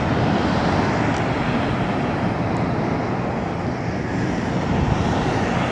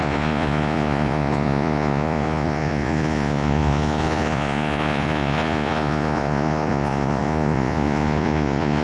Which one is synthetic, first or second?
second